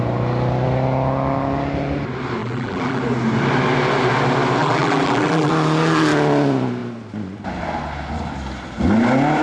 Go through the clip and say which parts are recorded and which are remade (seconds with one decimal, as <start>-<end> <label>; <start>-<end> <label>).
0.0-2.4 recorded; 2.4-3.0 remade; 3.0-4.6 recorded; 4.6-5.5 remade; 5.5-9.4 recorded